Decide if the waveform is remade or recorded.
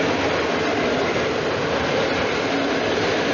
recorded